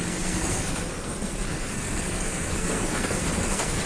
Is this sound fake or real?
fake